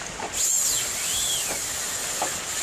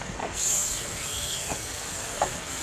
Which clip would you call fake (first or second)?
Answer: second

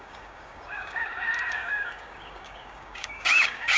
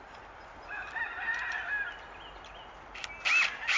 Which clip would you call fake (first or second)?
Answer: first